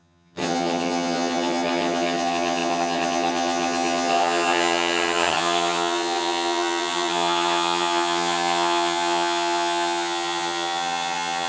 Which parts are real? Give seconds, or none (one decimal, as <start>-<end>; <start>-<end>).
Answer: none